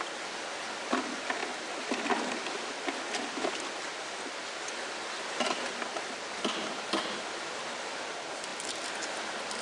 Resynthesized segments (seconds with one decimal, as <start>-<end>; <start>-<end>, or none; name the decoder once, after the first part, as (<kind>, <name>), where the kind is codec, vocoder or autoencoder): none